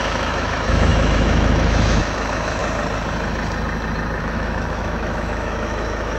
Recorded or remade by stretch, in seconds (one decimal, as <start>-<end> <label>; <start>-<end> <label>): 0.0-2.6 remade; 2.6-4.2 recorded; 4.2-6.2 remade